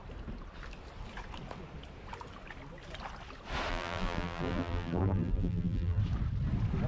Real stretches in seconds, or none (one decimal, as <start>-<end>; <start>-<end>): 0.0-3.7; 6.0-6.9